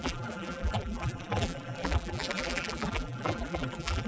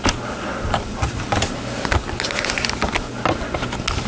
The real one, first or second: second